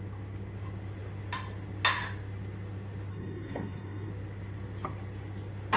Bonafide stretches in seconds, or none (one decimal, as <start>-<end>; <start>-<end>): 0.0-3.1; 4.1-5.8

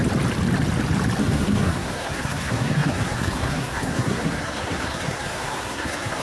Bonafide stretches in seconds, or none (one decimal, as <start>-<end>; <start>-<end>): 0.0-1.2

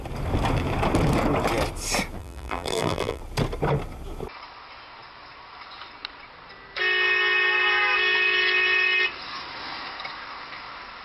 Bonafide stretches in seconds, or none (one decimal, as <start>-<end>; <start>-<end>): 0.0-2.2; 3.2-11.0

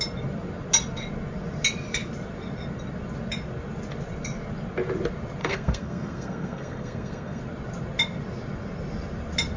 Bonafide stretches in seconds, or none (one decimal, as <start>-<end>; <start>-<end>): 0.0-5.4; 7.4-9.6